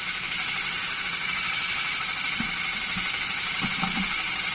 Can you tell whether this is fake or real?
fake